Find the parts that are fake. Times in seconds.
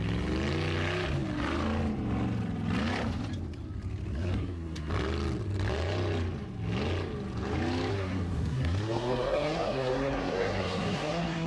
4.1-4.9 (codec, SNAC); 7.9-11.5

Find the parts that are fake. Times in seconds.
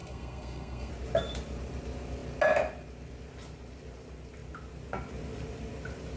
0.0-0.9 (codec, SNAC)